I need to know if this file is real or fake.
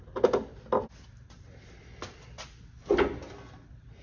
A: real